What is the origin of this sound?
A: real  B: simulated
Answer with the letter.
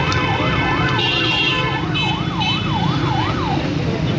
B